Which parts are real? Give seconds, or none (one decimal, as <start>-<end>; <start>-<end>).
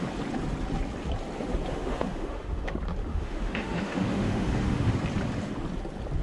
0.0-1.7; 2.7-3.1; 4.9-6.2